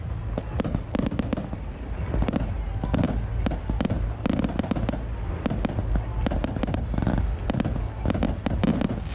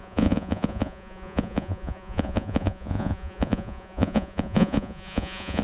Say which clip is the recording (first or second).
first